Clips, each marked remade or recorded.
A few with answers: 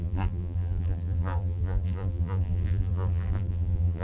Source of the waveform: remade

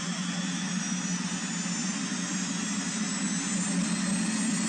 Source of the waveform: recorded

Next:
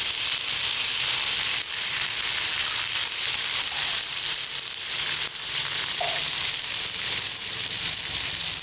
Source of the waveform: remade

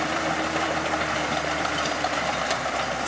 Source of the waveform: remade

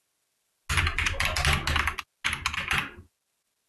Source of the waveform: recorded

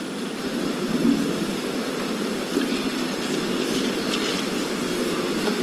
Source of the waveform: recorded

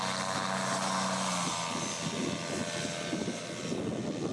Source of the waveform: recorded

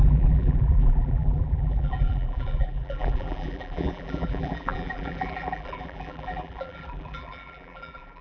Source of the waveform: remade